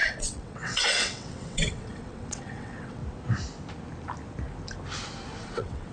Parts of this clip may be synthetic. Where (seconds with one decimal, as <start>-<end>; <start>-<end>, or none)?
0.0-3.0; 5.4-5.9